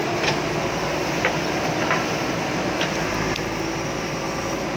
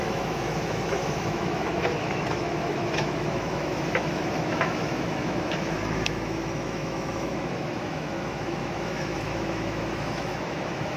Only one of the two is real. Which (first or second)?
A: first